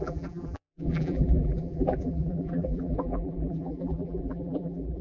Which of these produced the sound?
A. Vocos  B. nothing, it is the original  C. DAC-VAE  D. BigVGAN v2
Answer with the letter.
D